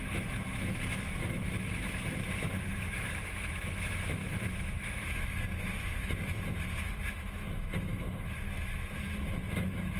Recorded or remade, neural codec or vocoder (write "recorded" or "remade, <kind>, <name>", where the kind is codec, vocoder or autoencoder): remade, autoencoder, DAC-VAE